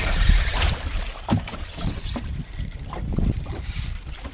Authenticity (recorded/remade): remade